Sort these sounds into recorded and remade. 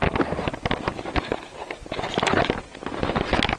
recorded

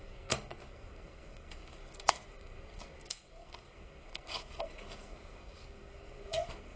remade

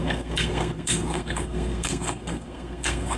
remade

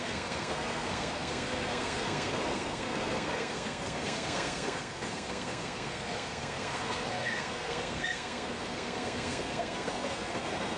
remade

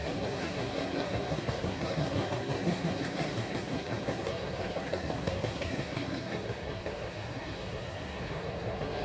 remade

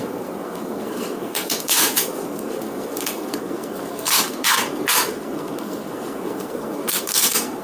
remade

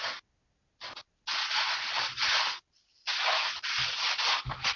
recorded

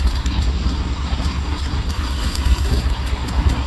remade